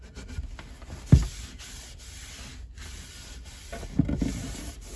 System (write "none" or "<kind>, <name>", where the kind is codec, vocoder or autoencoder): none